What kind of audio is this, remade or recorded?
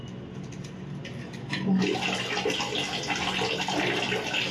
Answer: recorded